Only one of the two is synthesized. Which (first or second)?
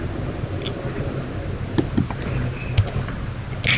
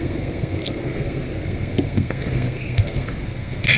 second